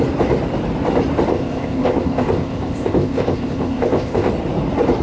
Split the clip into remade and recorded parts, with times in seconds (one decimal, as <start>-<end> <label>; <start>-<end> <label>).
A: 0.0-1.3 recorded; 1.3-4.3 remade; 4.3-5.0 recorded